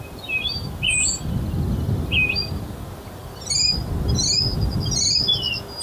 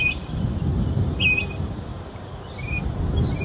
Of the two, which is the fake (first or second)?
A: second